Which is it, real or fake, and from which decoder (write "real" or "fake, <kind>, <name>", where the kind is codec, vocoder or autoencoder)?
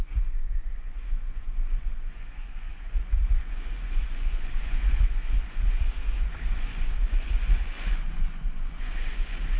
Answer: fake, vocoder, Vocos